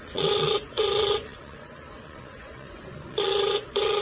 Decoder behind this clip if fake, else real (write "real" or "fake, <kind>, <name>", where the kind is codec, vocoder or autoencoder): fake, vocoder, Vocos